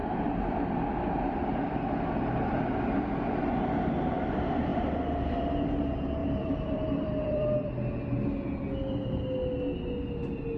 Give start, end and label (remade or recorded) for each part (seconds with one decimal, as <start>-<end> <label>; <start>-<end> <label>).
0.0-6.2 recorded; 6.2-7.9 remade; 7.9-10.6 recorded